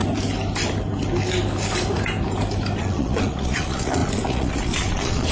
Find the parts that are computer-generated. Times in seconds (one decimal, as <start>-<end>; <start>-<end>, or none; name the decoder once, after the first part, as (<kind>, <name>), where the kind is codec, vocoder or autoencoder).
2.8-5.3 (vocoder, Vocos)